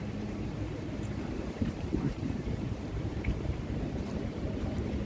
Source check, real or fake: fake